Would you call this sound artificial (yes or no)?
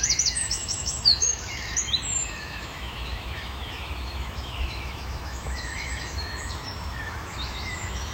yes